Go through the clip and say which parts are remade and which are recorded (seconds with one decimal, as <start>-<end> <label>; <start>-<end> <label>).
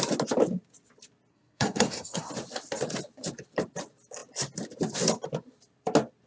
0.0-1.3 recorded; 1.3-2.3 remade; 2.3-6.3 recorded